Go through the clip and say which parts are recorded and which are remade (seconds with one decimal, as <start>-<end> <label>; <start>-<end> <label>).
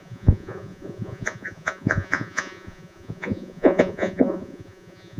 0.0-5.2 remade